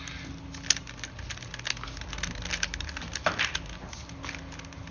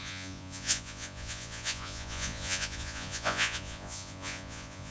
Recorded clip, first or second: first